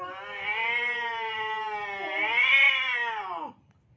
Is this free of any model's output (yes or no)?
yes